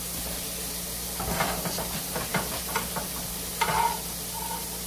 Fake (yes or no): no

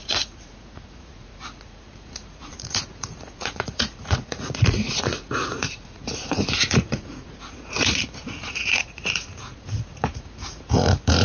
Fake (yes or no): yes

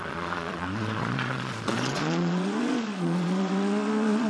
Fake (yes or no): yes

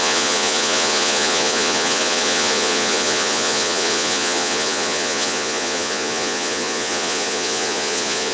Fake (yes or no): yes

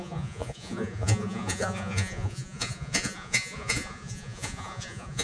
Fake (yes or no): yes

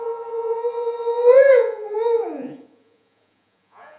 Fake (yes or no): yes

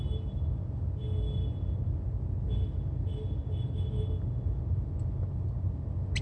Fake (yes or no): no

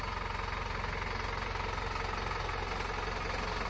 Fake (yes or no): no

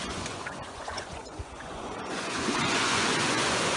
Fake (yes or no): yes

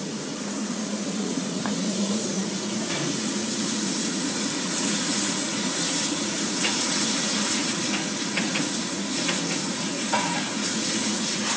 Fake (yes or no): yes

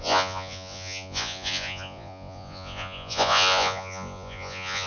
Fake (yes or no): yes